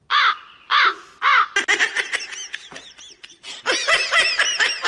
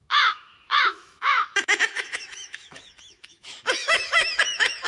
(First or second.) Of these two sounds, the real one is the first